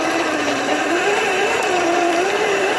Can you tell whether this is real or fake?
fake